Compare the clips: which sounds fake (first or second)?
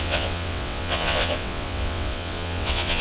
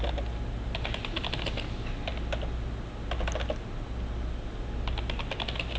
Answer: first